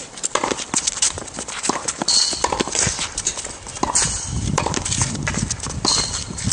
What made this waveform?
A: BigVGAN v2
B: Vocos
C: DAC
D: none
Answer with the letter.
A